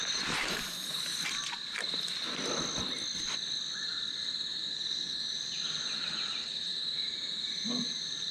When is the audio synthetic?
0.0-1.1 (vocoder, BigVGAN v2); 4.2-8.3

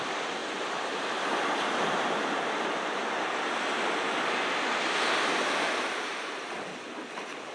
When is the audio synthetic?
0.0-7.5 (vocoder, BigVGAN v2)